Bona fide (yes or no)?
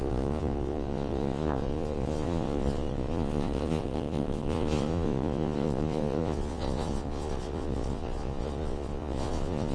no